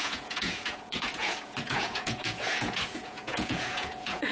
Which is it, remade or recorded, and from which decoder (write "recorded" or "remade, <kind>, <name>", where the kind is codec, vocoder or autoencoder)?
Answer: remade, vocoder, Vocos